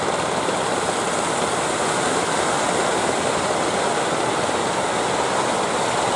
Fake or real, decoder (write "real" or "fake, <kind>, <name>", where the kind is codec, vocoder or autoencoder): real